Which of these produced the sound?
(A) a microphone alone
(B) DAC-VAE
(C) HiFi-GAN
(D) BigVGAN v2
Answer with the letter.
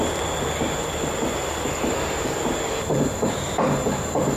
A